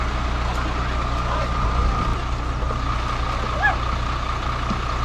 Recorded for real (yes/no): yes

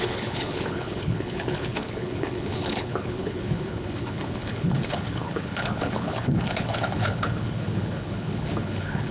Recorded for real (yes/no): no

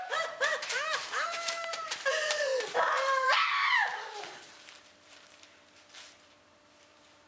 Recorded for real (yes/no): no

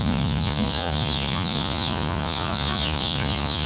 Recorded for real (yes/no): no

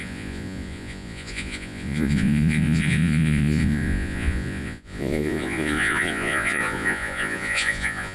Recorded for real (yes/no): no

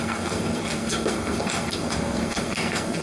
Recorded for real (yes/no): no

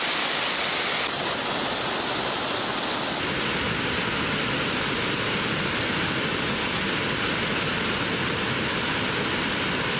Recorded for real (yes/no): yes